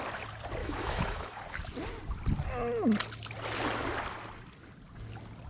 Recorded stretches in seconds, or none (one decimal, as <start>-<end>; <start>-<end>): 0.0-0.6; 1.4-5.5